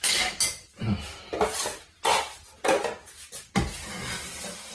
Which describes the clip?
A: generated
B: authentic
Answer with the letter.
B